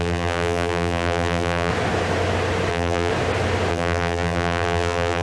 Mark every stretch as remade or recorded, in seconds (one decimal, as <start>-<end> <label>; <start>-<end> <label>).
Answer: 0.0-1.7 remade; 1.7-2.7 recorded; 2.7-3.1 remade; 3.1-3.7 recorded; 3.7-5.2 remade